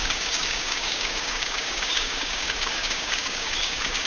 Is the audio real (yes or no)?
no